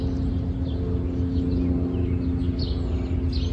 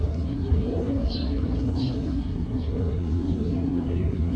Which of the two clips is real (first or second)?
first